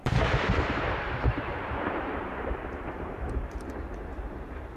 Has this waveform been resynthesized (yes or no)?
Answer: yes